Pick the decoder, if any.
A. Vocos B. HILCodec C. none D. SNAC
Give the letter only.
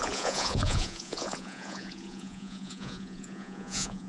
A